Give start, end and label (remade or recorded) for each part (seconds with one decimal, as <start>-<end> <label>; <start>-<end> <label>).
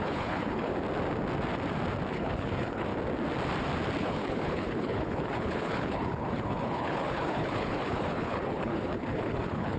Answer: 0.0-0.7 remade; 0.7-2.1 recorded; 2.1-2.9 remade; 2.9-4.0 recorded; 4.0-9.8 remade